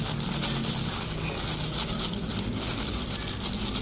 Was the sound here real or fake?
real